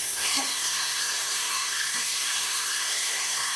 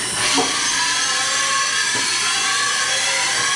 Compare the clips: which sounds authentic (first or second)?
second